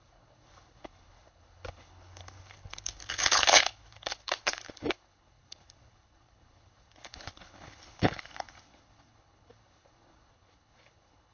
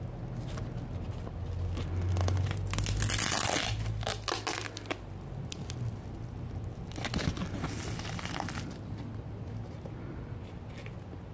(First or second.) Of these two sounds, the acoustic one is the second